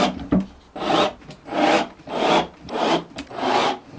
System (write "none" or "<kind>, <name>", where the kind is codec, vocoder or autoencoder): none